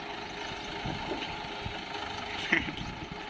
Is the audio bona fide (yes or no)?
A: yes